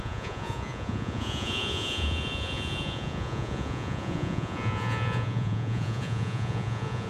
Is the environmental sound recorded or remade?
remade